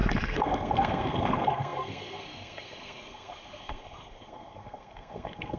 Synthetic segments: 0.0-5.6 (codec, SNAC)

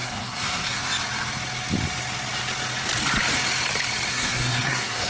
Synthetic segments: 0.0-0.8 (codec, SNAC); 4.1-5.1

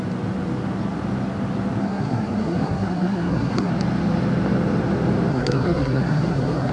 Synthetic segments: 1.8-3.7 (codec, SNAC); 5.3-6.7